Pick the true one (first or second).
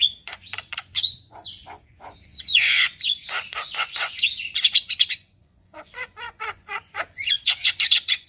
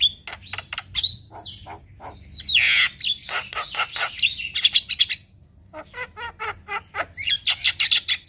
second